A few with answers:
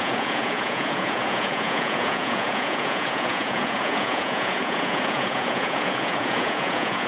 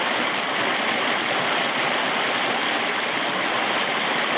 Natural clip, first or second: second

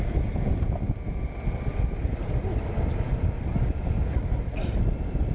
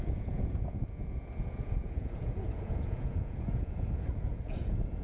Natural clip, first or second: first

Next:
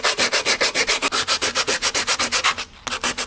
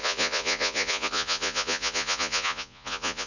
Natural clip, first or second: first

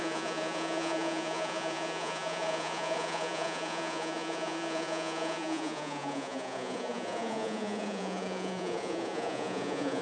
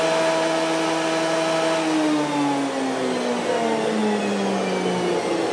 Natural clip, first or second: second